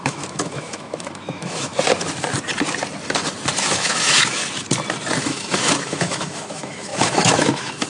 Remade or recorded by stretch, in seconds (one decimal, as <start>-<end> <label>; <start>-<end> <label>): 0.0-1.7 remade; 1.7-3.6 recorded; 3.6-4.4 remade; 4.4-5.2 recorded; 5.2-7.9 remade